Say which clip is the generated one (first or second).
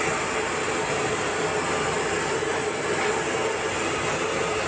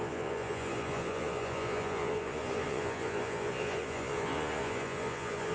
second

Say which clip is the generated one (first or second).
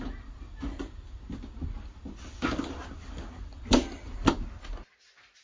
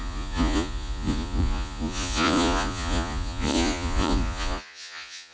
second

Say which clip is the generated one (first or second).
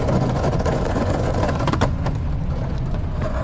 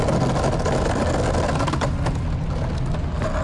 first